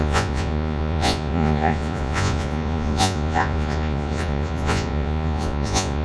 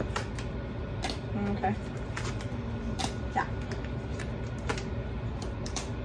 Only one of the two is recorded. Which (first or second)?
second